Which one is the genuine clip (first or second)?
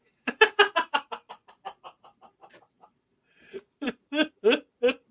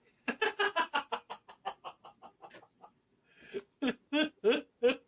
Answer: second